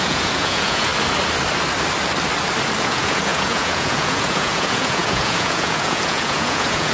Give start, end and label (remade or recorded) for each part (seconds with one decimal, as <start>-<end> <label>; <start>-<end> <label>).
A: 0.0-0.9 remade; 0.9-2.8 recorded; 2.8-6.9 remade